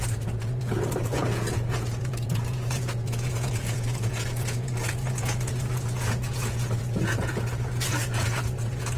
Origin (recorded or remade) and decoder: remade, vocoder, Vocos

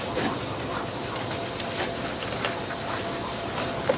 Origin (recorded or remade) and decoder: recorded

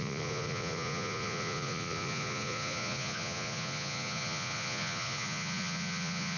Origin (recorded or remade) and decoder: remade, vocoder, Vocos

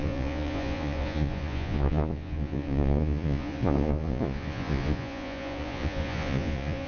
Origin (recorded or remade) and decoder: remade, vocoder, Vocos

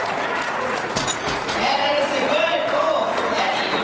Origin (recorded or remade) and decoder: remade, vocoder, Vocos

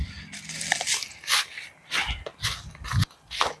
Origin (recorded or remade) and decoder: recorded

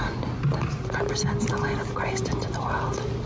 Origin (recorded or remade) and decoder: recorded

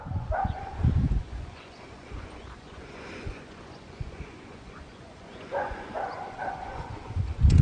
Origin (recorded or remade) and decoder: remade, vocoder, Vocos